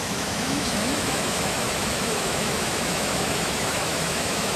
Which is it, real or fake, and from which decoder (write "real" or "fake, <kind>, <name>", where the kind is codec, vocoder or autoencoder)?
fake, autoencoder, DAC-VAE